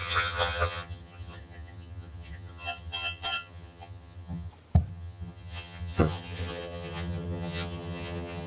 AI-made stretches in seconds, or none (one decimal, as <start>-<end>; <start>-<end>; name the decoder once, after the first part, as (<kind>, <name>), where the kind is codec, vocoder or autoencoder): 0.0-4.5 (vocoder, HiFi-GAN); 4.9-8.5